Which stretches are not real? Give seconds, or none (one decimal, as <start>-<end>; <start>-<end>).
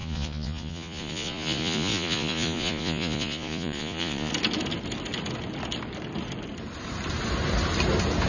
0.0-4.3